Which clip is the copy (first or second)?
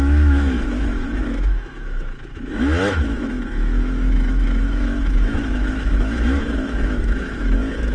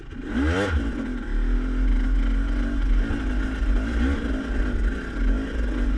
first